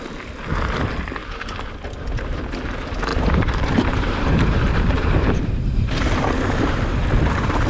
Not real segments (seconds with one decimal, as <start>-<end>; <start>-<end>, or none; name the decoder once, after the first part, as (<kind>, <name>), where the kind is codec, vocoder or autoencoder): 3.1-7.7 (vocoder, BigVGAN v2)